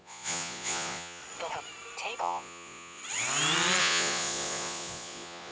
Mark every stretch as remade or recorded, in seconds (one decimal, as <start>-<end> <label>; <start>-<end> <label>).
0.0-1.2 remade; 1.2-2.2 recorded; 2.2-3.0 remade; 3.0-3.8 recorded; 3.8-5.5 remade